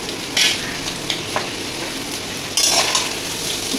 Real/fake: real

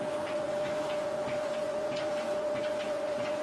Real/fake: fake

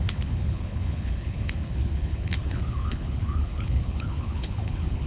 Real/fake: fake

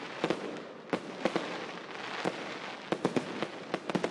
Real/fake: real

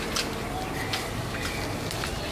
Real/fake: real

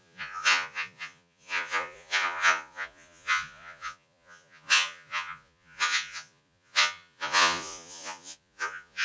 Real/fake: fake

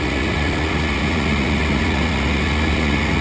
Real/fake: fake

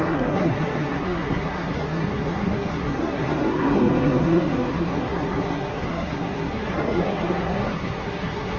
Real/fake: fake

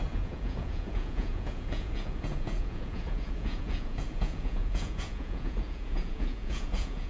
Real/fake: fake